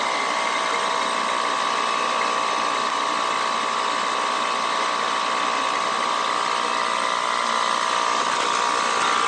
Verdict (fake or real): real